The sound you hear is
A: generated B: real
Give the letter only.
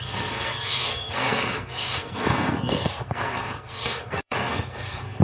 A